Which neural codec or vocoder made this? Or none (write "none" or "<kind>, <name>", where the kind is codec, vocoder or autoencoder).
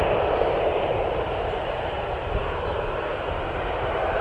vocoder, BigVGAN v2